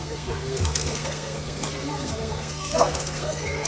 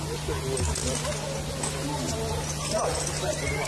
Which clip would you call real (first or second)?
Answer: second